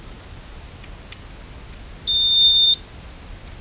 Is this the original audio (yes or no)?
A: yes